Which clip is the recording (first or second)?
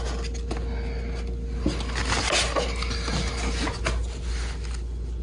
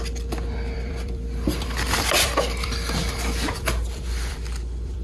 first